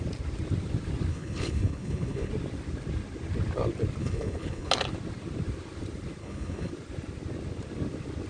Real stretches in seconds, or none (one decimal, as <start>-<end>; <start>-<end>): 0.0-1.1; 2.3-4.0; 4.7-6.2; 6.7-8.3